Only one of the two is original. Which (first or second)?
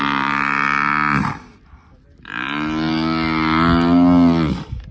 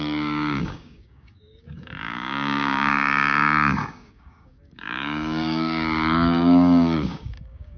first